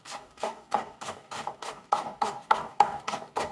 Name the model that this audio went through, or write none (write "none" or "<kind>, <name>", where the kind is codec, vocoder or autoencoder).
codec, DAC